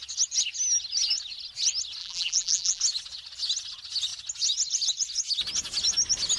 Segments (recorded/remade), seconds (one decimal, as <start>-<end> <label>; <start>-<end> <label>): 0.0-2.0 recorded; 2.0-2.8 remade; 2.8-6.4 recorded